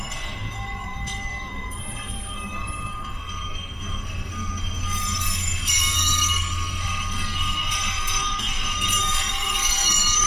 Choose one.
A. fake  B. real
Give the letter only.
A